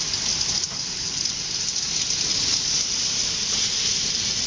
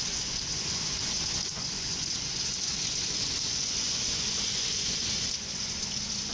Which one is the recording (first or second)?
first